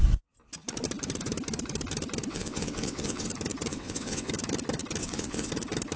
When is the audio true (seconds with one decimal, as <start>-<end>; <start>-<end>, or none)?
0.0-2.3; 3.3-3.7; 4.3-5.0; 5.5-6.0